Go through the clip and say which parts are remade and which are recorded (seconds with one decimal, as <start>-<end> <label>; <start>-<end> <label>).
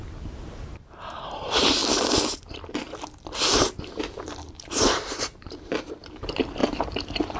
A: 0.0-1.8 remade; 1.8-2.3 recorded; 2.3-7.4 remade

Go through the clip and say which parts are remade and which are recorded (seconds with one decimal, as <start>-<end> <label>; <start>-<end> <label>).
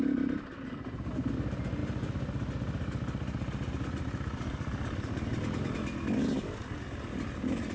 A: 0.0-7.7 recorded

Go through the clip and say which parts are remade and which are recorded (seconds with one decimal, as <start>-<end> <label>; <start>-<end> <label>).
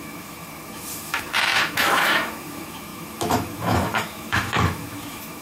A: 0.0-5.4 remade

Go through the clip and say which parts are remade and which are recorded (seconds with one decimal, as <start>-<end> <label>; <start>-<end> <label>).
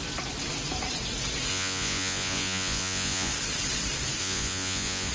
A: 0.0-1.5 recorded; 1.5-3.3 remade; 3.3-4.2 recorded; 4.2-5.1 remade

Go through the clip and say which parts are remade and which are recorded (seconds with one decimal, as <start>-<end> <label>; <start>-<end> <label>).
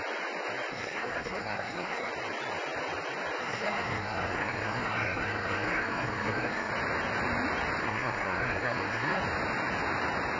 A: 0.0-0.7 recorded; 0.7-2.1 remade; 2.1-3.4 recorded; 3.4-6.7 remade; 6.7-7.8 recorded; 7.8-9.2 remade; 9.2-10.4 recorded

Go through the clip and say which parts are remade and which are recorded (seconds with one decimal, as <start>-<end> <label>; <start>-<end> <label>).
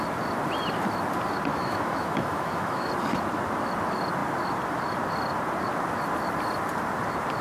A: 0.0-1.5 recorded; 1.5-2.9 remade; 2.9-7.4 recorded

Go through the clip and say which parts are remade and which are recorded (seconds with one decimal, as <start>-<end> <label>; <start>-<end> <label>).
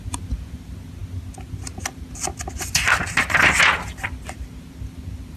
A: 0.0-5.4 recorded